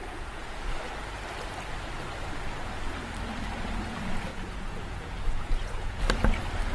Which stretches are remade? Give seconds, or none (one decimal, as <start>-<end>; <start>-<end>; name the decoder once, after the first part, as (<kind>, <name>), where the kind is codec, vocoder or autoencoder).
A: 0.0-0.7 (vocoder, Vocos); 4.3-6.0